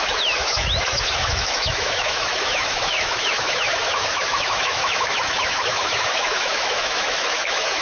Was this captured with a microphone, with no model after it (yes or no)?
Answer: no